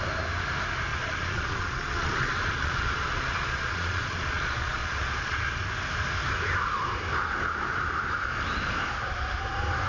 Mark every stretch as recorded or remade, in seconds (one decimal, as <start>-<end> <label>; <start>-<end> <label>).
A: 0.0-0.9 recorded; 0.9-5.4 remade; 5.4-9.9 recorded